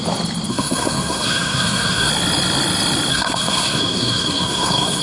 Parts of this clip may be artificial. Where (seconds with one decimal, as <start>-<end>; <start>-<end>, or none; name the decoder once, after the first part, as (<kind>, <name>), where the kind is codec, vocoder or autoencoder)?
0.5-2.1 (codec, SNAC); 3.1-5.0